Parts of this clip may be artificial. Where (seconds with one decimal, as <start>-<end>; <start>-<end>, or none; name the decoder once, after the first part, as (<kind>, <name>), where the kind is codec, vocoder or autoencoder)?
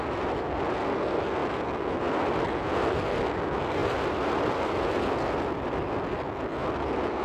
3.8-4.7 (vocoder, BigVGAN v2)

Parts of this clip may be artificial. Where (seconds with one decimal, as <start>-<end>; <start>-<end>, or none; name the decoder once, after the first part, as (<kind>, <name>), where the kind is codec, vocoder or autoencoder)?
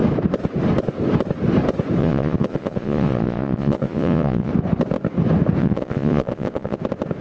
2.0-4.5 (vocoder, Vocos); 5.6-6.8